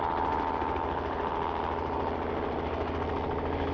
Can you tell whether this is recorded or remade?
recorded